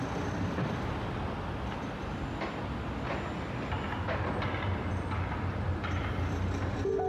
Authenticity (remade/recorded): recorded